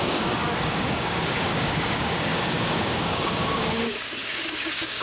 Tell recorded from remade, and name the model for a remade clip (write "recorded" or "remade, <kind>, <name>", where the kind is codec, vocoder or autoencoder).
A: remade, codec, DAC